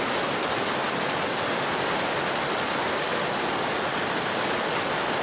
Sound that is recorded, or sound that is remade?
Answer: recorded